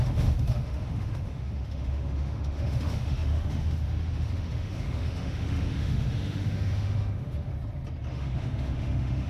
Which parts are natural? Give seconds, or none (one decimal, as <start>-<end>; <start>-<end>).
7.5-8.1